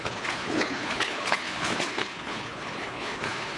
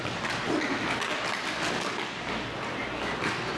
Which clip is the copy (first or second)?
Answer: first